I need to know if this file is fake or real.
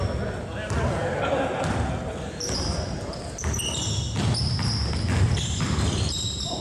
real